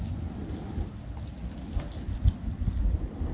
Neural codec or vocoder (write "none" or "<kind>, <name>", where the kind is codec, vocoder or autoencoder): none